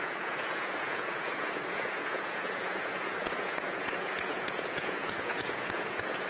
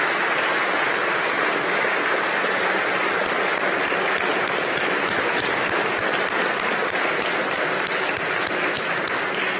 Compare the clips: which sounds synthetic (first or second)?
first